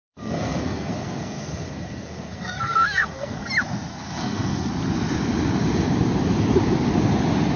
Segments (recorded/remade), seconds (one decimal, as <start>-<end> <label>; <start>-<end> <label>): 0.0-3.5 remade; 3.5-3.9 recorded; 3.9-4.7 remade; 4.7-7.6 recorded